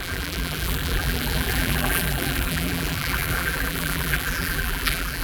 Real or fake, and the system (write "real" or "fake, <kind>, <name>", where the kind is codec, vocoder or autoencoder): fake, vocoder, BigVGAN v2